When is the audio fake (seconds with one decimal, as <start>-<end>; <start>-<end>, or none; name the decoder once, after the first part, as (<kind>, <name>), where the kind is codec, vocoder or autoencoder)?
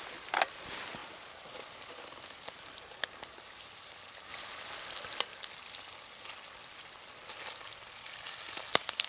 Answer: 1.0-2.6 (vocoder, BigVGAN v2)